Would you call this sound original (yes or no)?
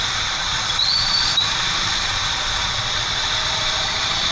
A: no